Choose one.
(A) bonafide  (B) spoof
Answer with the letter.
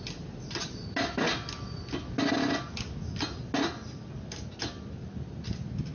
A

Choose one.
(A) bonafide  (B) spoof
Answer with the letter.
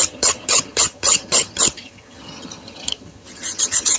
B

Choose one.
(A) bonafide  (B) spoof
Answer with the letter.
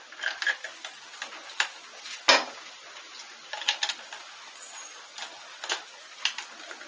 A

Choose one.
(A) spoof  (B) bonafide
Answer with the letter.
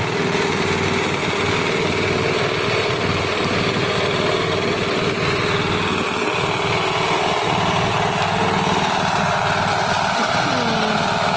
B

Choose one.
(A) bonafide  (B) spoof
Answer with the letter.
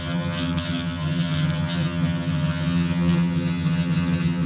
B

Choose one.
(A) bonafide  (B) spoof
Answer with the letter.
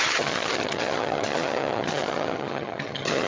B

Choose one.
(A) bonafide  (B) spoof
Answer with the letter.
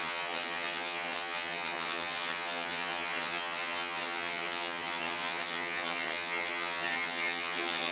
B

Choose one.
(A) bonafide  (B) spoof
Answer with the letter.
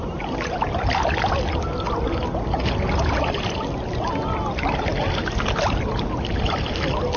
A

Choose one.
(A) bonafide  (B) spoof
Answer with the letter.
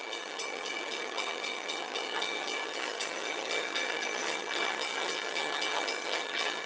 B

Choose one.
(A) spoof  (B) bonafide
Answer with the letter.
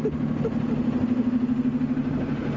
B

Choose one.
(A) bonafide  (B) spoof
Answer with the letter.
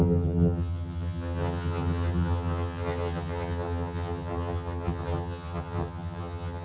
B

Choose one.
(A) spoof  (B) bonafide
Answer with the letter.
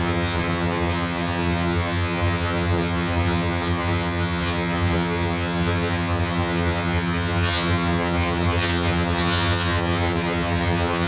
A